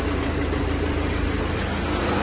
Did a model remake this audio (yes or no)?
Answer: yes